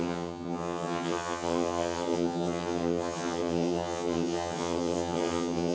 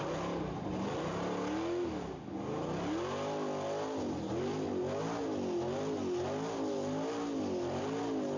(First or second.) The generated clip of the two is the first